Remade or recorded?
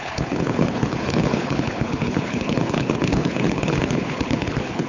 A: remade